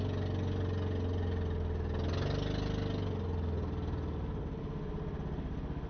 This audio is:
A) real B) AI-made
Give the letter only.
A